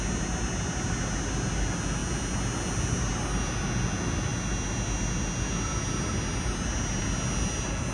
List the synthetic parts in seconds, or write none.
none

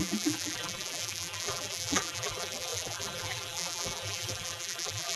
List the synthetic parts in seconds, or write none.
0.0-5.2 (vocoder, BigVGAN v2)

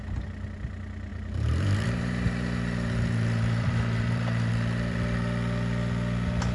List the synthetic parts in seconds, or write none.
1.1-4.5 (vocoder, BigVGAN v2)

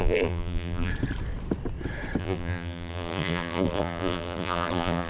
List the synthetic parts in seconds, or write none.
0.0-0.9 (vocoder, BigVGAN v2); 2.2-5.1

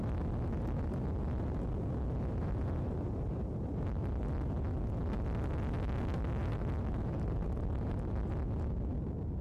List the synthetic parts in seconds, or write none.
2.3-4.0 (vocoder, BigVGAN v2); 6.4-8.3

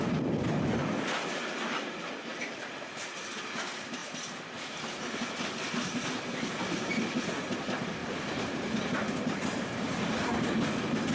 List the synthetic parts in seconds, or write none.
2.3-3.4 (vocoder, BigVGAN v2); 8.0-10.3

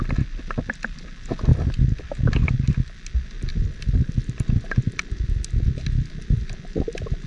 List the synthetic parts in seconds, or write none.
3.5-4.1 (vocoder, BigVGAN v2)